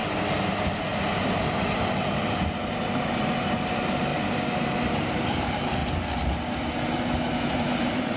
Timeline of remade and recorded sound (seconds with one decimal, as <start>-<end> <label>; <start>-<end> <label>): 0.0-2.3 recorded; 2.3-4.1 remade; 4.1-5.2 recorded; 5.2-5.8 remade; 5.8-7.5 recorded; 7.5-8.2 remade